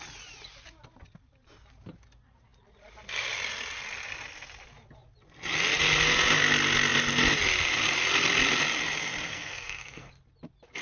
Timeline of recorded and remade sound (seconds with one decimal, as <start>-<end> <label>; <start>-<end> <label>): 0.0-9.3 recorded; 9.3-10.1 remade; 10.1-10.8 recorded